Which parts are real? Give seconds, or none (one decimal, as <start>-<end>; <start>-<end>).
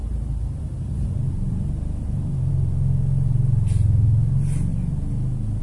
2.5-4.7